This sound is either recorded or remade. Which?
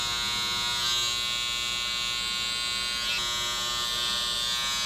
recorded